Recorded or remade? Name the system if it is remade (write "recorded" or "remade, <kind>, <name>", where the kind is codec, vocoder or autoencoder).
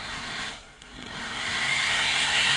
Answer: remade, codec, SNAC